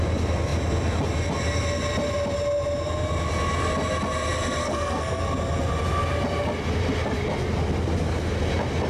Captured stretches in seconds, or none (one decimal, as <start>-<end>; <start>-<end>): 0.0-4.6; 5.2-8.9